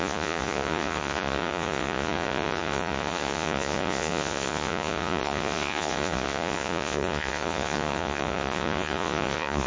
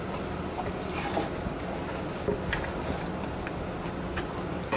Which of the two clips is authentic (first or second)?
second